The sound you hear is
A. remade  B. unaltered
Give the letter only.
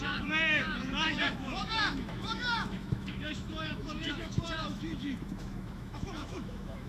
A